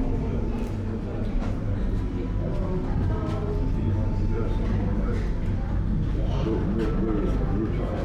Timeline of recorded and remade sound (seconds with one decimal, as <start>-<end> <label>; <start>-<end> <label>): 0.0-1.1 recorded; 1.1-2.0 remade; 2.0-8.0 recorded